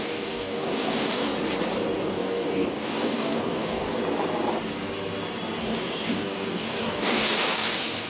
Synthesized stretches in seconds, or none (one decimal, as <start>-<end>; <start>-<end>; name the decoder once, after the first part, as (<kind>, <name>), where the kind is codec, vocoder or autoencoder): 0.0-1.3 (codec, DAC); 2.0-4.0; 5.6-8.1